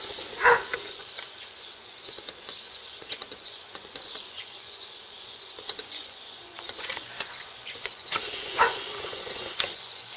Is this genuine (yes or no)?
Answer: no